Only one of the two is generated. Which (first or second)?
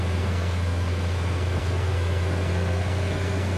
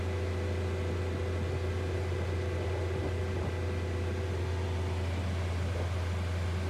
first